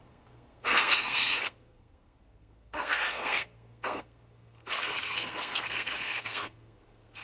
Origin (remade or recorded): remade